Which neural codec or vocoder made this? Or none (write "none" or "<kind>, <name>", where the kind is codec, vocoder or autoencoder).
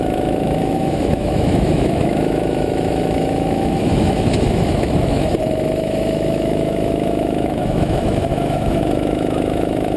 autoencoder, DAC-VAE